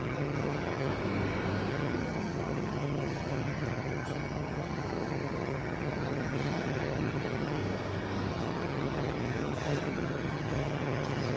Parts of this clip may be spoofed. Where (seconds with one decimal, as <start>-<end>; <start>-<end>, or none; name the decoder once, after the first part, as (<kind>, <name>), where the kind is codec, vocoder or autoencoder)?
0.0-0.9 (vocoder, HiFi-GAN); 1.7-7.6; 8.3-11.4